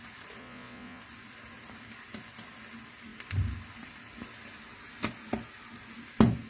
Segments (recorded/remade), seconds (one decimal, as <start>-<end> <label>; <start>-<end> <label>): 0.0-0.4 recorded; 0.4-1.0 remade; 1.0-6.5 recorded